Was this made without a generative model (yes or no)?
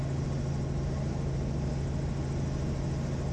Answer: yes